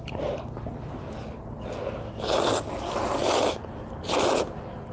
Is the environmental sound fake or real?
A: real